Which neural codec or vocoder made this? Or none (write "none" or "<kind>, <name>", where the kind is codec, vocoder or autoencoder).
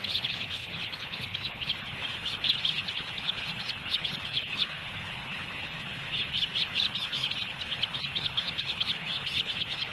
codec, HILCodec